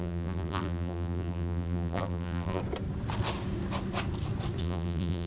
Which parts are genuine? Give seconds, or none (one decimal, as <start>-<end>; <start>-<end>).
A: 2.6-4.6